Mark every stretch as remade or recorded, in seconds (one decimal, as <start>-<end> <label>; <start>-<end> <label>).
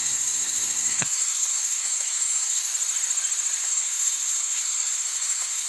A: 0.0-2.7 remade; 2.7-3.6 recorded; 3.6-5.7 remade